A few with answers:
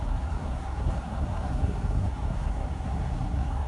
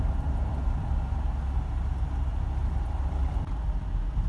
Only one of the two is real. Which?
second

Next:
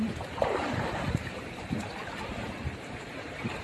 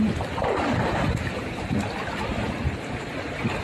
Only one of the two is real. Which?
second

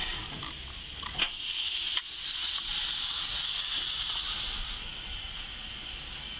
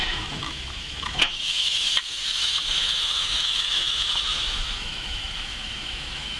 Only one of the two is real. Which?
first